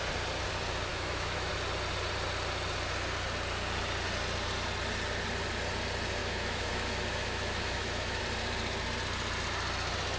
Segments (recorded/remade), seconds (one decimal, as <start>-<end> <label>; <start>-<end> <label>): 0.0-0.9 recorded; 0.9-1.5 remade; 1.5-6.2 recorded; 6.2-8.2 remade; 8.2-10.2 recorded

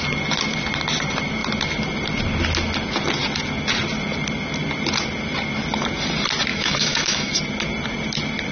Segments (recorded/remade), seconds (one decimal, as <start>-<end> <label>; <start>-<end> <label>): 0.0-6.5 recorded; 6.5-7.3 remade; 7.3-8.5 recorded

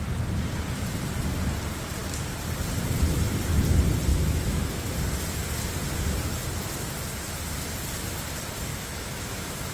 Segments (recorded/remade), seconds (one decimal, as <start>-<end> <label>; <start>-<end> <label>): 0.0-4.1 recorded; 4.1-4.9 remade; 4.9-8.7 recorded; 8.7-9.7 remade

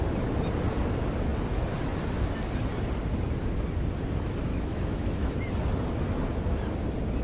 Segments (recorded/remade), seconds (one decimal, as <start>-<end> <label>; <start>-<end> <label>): 0.0-4.5 recorded; 4.5-5.3 remade; 5.3-7.2 recorded

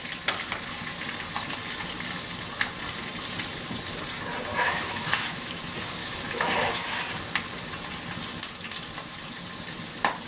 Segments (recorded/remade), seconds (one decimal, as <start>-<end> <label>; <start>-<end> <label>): 0.0-4.5 recorded; 4.5-5.6 remade; 5.6-6.0 recorded; 6.0-7.0 remade; 7.0-10.3 recorded

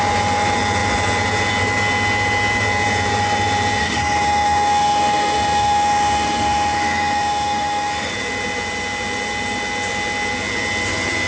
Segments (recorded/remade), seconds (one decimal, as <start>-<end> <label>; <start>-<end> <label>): 0.0-3.8 recorded; 3.8-8.1 remade; 8.1-11.3 recorded